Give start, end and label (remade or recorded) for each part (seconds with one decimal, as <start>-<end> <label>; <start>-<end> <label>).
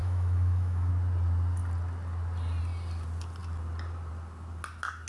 0.0-0.9 remade; 0.9-5.1 recorded